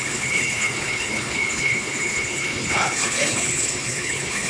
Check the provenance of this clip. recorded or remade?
remade